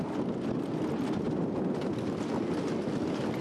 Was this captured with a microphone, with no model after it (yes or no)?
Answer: yes